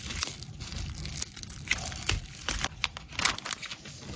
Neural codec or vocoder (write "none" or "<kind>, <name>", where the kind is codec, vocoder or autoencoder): none